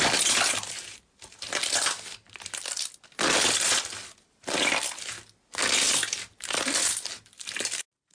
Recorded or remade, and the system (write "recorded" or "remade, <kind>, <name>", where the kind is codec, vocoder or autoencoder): recorded